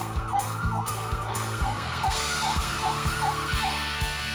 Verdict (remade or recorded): remade